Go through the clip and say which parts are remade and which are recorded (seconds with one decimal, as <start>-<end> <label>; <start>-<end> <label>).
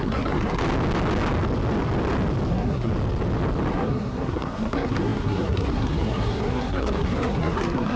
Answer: 0.0-0.6 remade; 0.6-2.5 recorded; 2.5-2.9 remade; 2.9-3.7 recorded; 3.7-8.0 remade